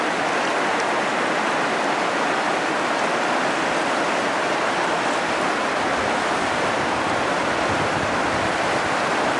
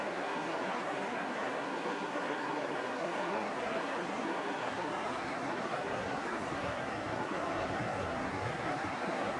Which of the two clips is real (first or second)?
first